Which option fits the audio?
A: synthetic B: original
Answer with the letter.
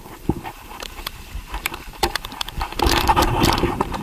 A